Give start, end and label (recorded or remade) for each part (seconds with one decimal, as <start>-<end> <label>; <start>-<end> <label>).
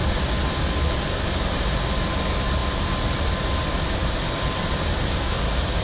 0.0-5.8 recorded